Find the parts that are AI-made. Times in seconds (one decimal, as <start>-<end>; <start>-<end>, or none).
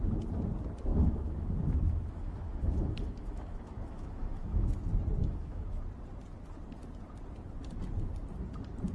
0.9-4.7; 5.2-5.8